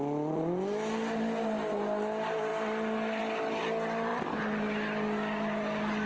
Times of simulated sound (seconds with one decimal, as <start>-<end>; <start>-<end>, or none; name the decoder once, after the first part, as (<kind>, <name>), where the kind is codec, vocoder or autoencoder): none